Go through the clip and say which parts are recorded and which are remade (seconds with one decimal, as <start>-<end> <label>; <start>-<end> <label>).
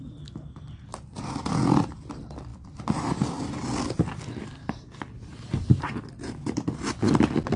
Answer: 0.0-0.9 recorded; 0.9-2.1 remade; 2.1-2.5 recorded; 2.5-3.4 remade; 3.4-5.3 recorded; 5.3-7.6 remade